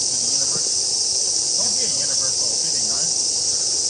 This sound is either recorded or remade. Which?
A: recorded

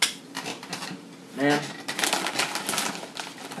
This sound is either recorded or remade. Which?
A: recorded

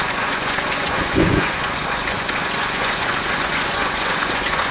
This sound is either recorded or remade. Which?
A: remade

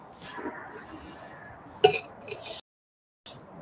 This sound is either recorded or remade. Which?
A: recorded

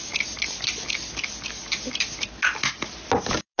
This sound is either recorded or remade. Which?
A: recorded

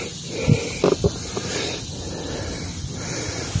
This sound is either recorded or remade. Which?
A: recorded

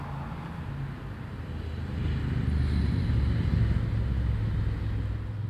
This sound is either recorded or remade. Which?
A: recorded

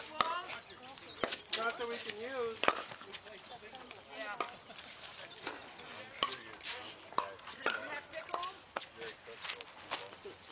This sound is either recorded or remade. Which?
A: recorded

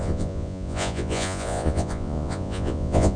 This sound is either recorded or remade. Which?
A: remade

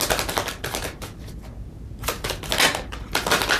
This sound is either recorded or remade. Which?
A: recorded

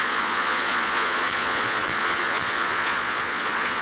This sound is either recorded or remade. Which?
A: remade